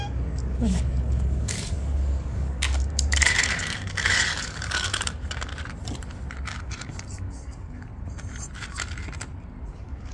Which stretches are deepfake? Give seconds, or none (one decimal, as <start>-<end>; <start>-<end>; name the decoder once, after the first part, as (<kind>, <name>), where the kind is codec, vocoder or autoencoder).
0.0-5.5 (codec, DAC); 6.6-7.9; 9.7-10.1

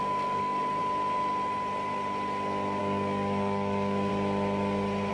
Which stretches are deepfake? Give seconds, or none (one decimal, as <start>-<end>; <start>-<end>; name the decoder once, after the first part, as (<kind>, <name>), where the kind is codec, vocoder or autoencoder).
0.0-0.8 (codec, DAC); 2.8-4.1

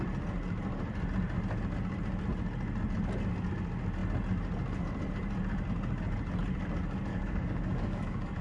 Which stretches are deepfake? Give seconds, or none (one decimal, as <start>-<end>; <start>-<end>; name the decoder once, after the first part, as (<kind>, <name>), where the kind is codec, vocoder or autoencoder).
7.1-8.4 (codec, DAC)